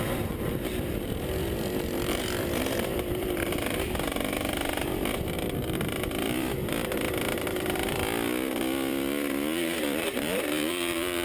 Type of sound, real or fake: fake